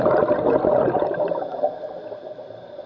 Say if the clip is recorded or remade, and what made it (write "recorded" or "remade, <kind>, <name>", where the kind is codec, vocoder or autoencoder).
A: recorded